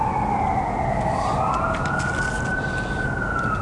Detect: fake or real real